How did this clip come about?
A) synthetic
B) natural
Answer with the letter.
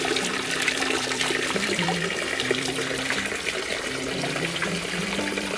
A